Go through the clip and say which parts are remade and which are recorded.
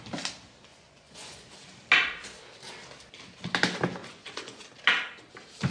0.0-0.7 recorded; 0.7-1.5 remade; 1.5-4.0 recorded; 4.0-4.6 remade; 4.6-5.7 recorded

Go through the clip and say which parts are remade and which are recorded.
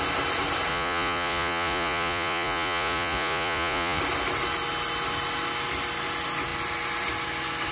0.0-0.7 recorded; 0.7-4.0 remade; 4.0-7.7 recorded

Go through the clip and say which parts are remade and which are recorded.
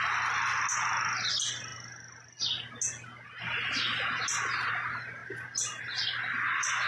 0.0-6.9 recorded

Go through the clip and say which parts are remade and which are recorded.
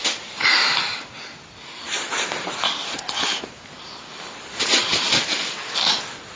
0.0-6.4 recorded